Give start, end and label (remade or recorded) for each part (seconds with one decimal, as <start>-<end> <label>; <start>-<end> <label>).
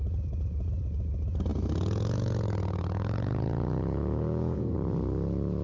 0.0-1.5 recorded; 1.5-4.7 remade; 4.7-5.6 recorded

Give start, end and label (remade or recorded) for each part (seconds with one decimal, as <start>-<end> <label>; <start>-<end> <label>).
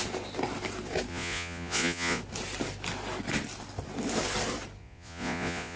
0.0-1.1 recorded; 1.1-2.2 remade; 2.2-4.8 recorded; 4.8-5.8 remade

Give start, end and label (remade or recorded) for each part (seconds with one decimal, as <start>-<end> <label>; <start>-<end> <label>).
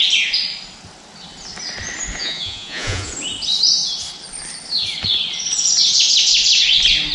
0.0-2.2 recorded; 2.2-3.1 remade; 3.1-7.1 recorded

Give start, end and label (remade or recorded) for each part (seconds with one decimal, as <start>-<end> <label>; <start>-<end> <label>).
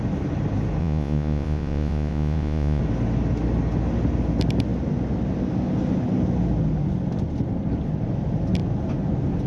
0.0-0.8 recorded; 0.8-2.8 remade; 2.8-9.5 recorded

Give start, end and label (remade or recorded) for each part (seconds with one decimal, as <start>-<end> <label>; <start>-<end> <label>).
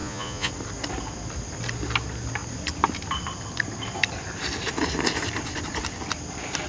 0.0-0.5 remade; 0.5-6.7 recorded